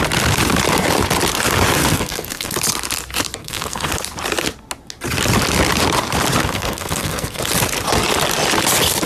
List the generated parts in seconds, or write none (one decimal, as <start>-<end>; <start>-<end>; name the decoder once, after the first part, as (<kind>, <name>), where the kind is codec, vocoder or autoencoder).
1.8-2.5 (codec, SNAC); 3.4-3.9; 6.4-7.4